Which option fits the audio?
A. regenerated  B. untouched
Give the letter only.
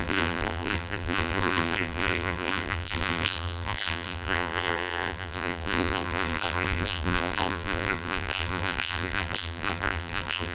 A